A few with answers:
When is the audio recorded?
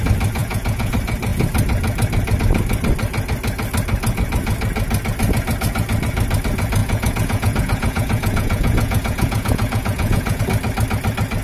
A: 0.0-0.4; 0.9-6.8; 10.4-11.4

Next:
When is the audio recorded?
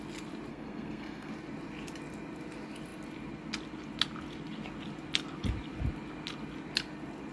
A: 0.0-0.5; 1.3-7.3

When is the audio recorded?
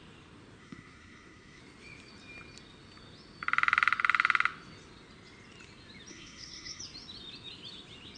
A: 0.0-0.6; 1.6-6.1; 6.8-8.2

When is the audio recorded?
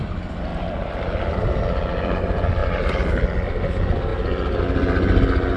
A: 0.0-2.6; 3.1-5.6